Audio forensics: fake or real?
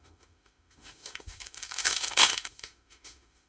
fake